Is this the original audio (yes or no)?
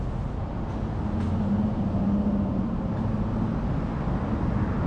yes